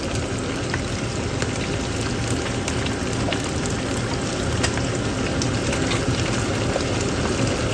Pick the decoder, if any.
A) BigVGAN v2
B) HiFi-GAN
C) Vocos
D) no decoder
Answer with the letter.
D